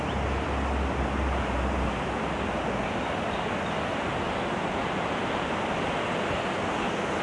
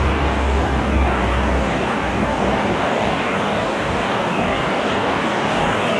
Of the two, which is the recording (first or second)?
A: first